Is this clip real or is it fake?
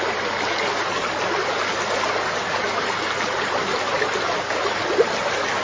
real